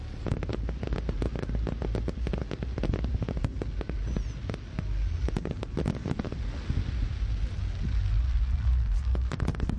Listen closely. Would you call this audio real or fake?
real